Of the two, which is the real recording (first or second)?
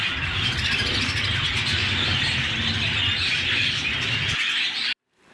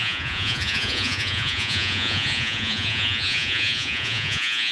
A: first